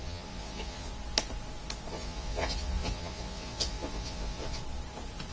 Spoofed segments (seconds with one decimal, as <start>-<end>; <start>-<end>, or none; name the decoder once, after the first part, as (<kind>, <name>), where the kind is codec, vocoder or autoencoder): 0.0-0.9 (vocoder, Vocos); 1.9-4.6